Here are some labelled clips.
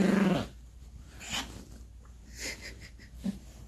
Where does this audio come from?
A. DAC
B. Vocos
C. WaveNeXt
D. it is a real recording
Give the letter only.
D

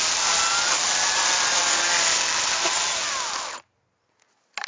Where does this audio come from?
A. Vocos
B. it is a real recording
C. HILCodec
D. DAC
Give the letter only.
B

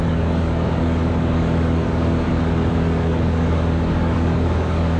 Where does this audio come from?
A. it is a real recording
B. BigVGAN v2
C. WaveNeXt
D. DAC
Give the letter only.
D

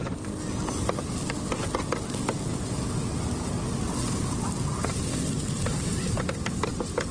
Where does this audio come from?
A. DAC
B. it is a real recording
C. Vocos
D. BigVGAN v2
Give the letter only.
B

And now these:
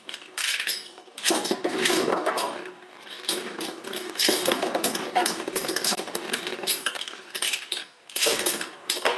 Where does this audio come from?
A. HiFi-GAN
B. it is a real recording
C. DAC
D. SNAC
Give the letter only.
C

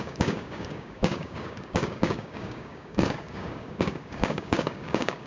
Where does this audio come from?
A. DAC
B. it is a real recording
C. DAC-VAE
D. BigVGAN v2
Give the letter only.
A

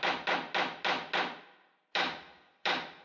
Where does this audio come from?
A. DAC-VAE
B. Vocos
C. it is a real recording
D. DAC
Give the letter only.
C